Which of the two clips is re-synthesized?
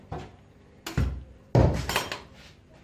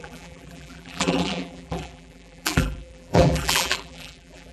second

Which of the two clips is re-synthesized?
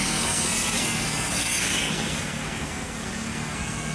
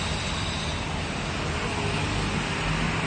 first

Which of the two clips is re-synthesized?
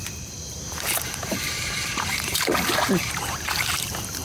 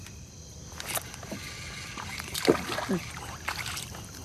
first